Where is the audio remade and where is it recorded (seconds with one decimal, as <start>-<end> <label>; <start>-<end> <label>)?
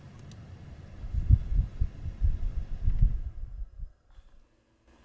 0.0-5.0 recorded